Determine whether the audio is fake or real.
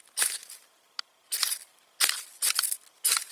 real